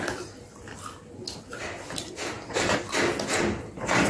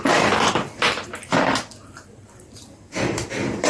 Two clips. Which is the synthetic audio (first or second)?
second